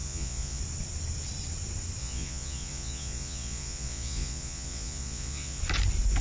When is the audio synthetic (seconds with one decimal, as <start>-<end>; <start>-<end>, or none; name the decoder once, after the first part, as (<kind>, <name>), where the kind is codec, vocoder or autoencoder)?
0.0-0.6 (vocoder, Vocos); 2.0-5.6